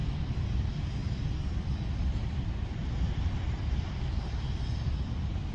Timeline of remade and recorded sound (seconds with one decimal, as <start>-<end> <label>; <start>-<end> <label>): 0.0-0.6 remade; 0.6-1.0 recorded; 1.0-4.3 remade; 4.3-5.5 recorded